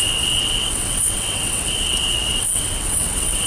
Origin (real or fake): fake